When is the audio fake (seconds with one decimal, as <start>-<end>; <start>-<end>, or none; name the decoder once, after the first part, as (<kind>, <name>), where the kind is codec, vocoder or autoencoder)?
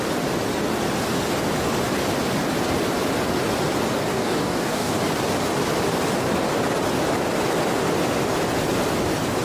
4.1-5.0 (codec, DAC)